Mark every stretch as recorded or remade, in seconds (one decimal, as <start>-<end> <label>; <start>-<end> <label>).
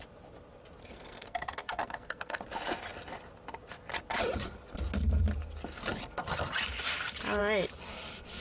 0.0-0.8 recorded; 0.8-2.4 remade; 2.4-8.4 recorded